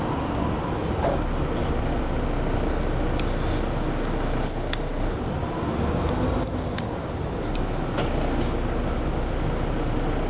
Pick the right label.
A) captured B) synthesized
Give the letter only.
A